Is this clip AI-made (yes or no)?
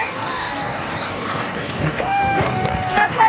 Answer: yes